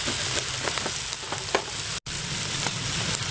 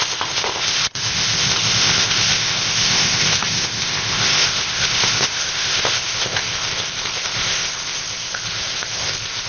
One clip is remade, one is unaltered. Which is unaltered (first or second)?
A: first